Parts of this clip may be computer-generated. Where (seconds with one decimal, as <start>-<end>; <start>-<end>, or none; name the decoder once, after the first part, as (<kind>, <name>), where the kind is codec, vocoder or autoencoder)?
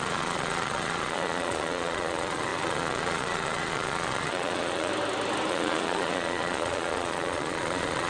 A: 0.0-4.9 (vocoder, Vocos); 5.5-8.1